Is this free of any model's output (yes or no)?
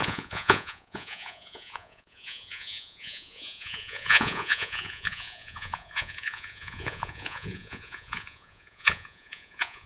no